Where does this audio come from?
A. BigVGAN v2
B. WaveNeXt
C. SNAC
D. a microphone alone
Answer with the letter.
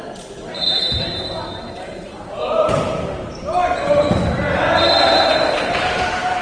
A